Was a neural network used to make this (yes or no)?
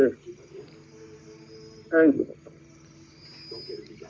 no